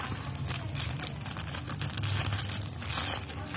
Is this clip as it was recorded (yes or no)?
yes